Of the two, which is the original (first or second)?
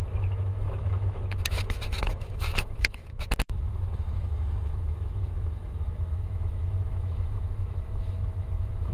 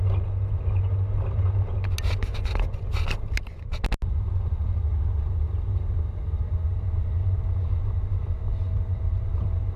second